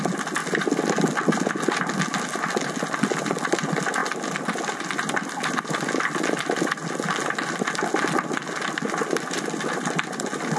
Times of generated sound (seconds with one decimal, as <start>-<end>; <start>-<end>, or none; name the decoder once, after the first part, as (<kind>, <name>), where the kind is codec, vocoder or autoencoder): none